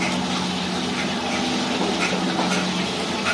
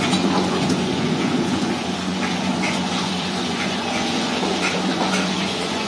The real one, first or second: first